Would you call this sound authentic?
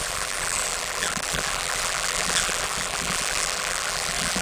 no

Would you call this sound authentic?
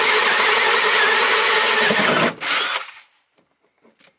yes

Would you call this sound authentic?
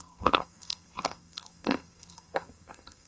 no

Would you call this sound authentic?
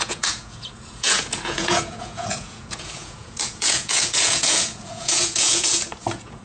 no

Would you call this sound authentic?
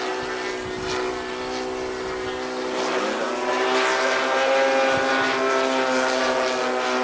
yes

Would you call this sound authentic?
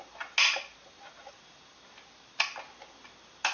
yes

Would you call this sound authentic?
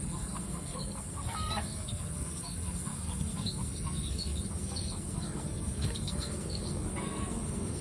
no